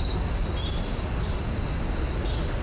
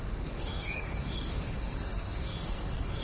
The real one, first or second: first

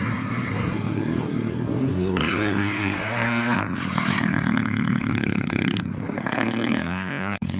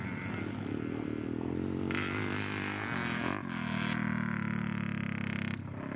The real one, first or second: second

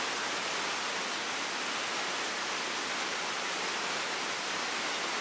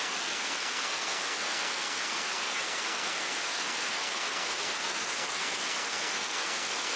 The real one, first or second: first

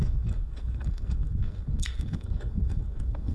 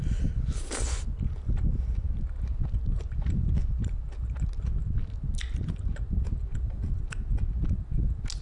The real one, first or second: second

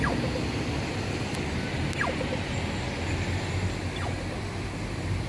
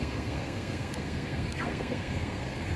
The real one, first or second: first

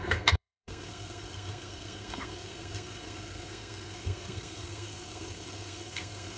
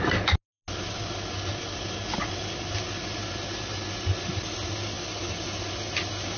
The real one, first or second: second